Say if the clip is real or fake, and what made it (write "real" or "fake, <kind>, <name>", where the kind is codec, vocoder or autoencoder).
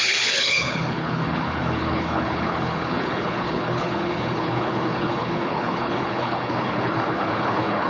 fake, codec, HILCodec